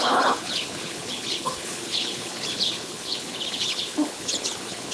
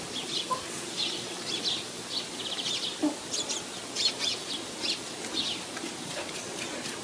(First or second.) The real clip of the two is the second